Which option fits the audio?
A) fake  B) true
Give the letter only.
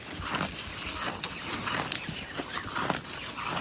B